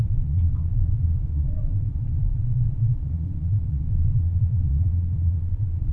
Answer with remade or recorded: remade